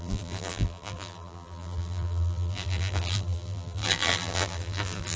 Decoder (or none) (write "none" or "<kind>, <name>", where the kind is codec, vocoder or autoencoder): vocoder, BigVGAN v2